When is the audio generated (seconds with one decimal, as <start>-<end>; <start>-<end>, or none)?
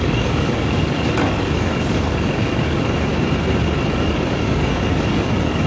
0.0-3.1; 3.9-5.7